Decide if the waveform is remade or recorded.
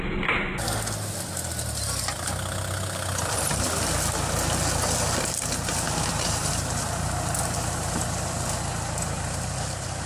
recorded